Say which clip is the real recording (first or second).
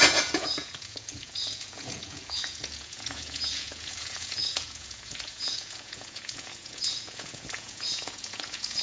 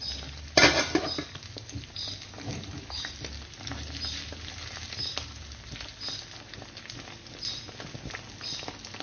second